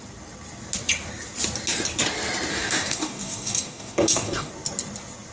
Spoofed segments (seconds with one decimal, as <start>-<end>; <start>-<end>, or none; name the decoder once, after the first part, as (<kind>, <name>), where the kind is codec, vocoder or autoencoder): 2.5-4.5 (codec, DAC)